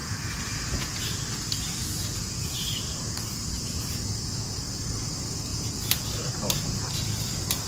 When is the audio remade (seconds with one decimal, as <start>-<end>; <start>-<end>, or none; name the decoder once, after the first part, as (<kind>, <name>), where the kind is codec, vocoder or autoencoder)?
0.0-1.0 (vocoder, Vocos); 1.8-3.0